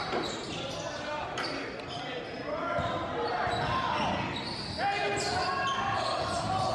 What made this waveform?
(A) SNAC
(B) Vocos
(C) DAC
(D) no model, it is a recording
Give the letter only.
D